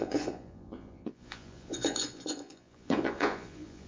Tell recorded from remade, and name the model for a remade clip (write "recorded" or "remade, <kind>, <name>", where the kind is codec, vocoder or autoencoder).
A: remade, vocoder, Vocos